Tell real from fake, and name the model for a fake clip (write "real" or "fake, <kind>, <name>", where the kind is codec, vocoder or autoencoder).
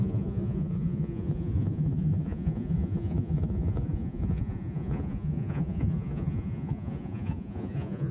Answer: fake, vocoder, Vocos